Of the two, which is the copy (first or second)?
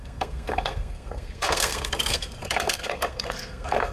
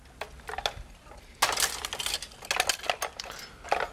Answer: first